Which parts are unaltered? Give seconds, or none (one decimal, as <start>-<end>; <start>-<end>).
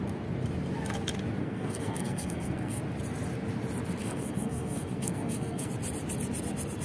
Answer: 0.0-1.4; 2.8-4.0; 5.7-6.8